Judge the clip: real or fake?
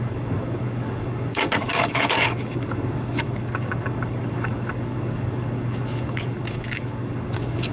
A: fake